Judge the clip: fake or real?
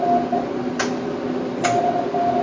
real